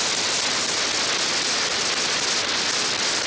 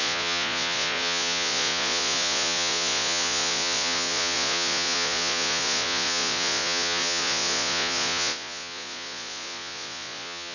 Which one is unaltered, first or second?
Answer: first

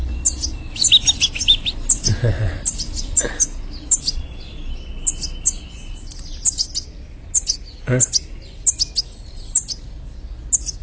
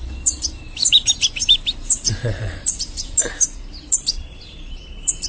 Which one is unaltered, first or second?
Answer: first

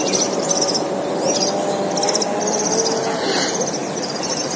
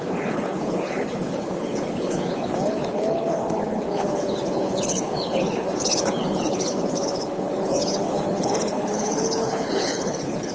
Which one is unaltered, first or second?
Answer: first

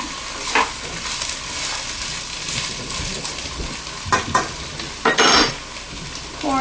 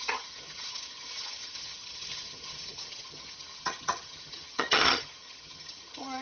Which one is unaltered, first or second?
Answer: first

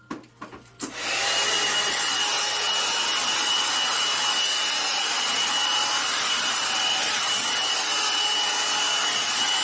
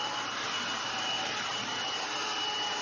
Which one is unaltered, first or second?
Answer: first